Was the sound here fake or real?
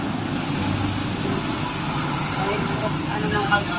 real